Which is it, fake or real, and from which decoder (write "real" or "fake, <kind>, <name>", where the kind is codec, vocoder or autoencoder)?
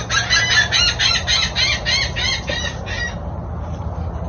real